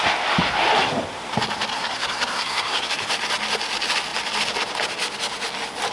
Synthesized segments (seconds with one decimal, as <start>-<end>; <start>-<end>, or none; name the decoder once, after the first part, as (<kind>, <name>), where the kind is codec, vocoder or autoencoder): 1.7-2.9 (codec, SNAC)